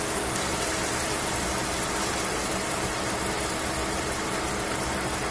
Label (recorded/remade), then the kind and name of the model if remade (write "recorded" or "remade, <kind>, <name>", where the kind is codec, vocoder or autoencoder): recorded